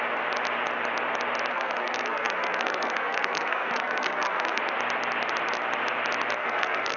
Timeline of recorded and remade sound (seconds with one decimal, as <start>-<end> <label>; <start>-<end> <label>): 0.0-1.5 recorded; 1.5-4.6 remade; 4.6-6.4 recorded; 6.4-7.0 remade